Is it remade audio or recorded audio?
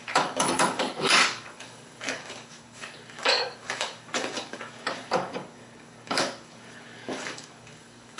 remade